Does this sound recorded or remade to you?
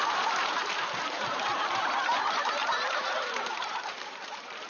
remade